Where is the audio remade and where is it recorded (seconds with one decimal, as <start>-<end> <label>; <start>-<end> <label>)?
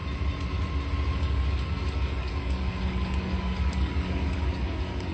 0.0-1.2 recorded; 1.2-5.1 remade